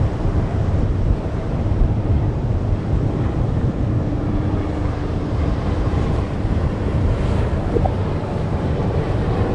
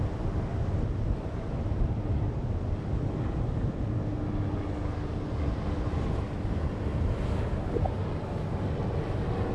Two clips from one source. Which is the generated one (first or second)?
first